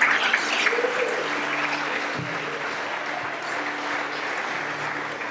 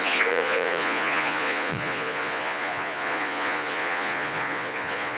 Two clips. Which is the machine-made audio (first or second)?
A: second